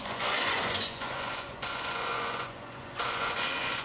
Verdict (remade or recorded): remade